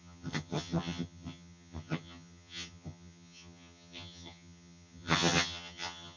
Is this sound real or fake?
fake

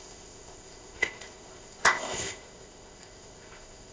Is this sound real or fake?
fake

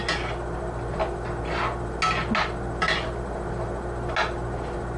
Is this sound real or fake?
real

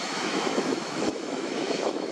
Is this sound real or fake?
fake